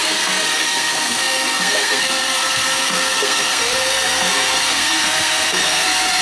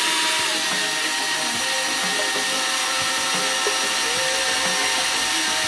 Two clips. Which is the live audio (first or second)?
second